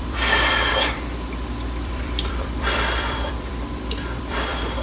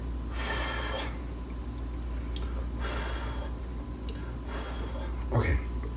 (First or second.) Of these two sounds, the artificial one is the first